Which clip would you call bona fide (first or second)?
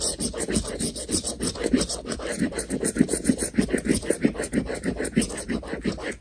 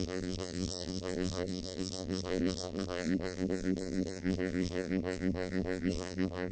first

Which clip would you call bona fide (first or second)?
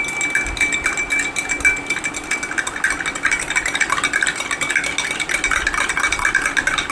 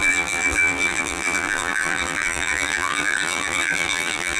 first